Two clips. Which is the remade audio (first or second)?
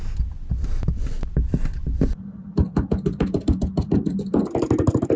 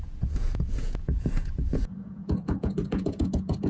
second